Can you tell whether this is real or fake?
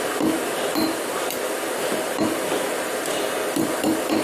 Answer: real